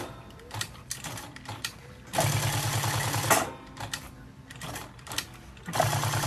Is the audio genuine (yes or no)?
yes